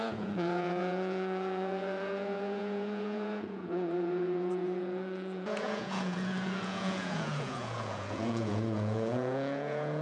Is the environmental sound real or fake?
fake